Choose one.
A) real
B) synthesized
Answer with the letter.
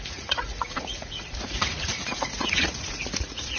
B